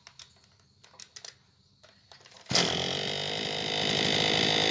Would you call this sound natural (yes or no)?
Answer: yes